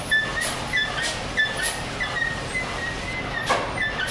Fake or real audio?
real